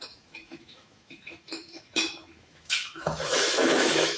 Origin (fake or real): fake